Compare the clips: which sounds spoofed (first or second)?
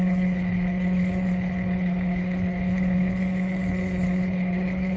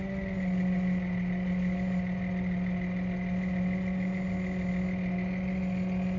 first